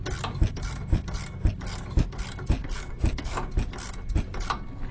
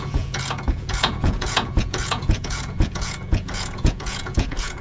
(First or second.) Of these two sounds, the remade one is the second